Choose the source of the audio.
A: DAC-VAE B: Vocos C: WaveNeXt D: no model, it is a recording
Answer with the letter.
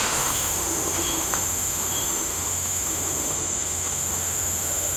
A